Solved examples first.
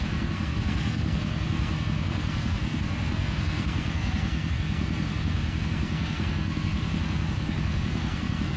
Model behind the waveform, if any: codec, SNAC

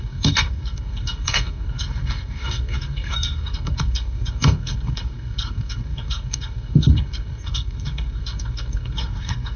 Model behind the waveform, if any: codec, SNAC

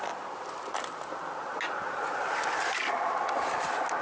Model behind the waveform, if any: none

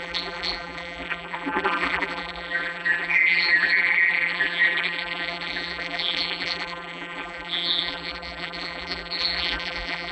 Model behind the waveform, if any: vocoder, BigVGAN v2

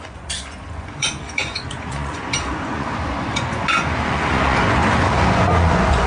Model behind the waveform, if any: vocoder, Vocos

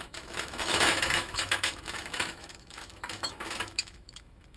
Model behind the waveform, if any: autoencoder, DAC-VAE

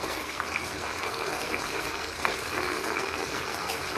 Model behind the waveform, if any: codec, SNAC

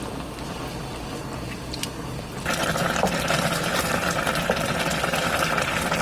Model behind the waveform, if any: none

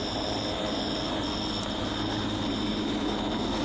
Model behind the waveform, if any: none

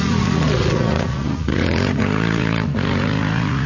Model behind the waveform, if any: vocoder, Vocos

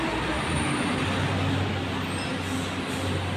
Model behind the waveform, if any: none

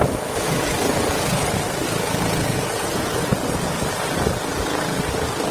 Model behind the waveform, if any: none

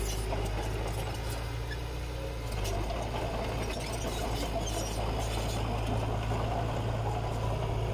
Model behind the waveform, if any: none